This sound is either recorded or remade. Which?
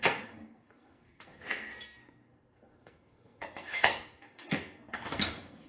remade